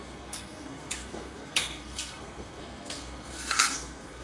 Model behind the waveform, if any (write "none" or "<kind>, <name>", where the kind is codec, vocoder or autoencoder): codec, SNAC